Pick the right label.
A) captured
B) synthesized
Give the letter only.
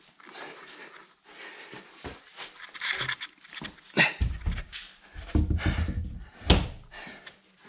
A